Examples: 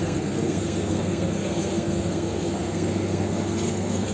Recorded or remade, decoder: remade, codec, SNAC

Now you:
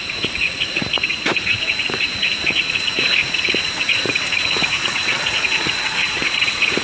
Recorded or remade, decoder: remade, vocoder, Vocos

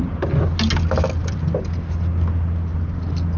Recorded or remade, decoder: recorded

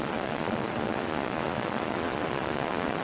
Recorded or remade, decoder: remade, vocoder, Vocos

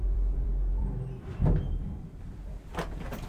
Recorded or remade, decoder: remade, vocoder, BigVGAN v2